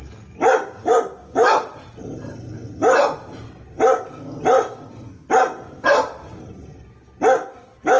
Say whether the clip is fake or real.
real